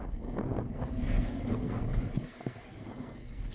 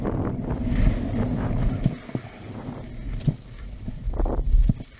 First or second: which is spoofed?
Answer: first